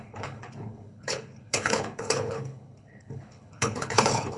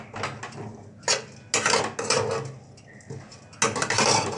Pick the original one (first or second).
second